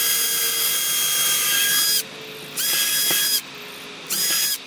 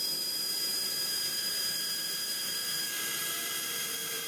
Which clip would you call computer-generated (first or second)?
second